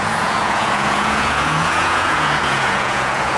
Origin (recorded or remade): remade